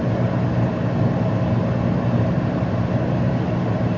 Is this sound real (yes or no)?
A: yes